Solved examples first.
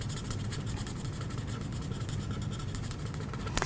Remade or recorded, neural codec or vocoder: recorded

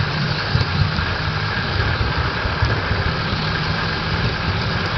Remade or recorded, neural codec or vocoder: remade, vocoder, BigVGAN v2